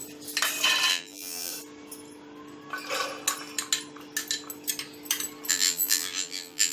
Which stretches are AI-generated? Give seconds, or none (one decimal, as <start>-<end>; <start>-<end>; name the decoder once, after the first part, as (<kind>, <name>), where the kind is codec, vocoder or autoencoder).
0.9-1.5 (vocoder, BigVGAN v2); 5.5-6.7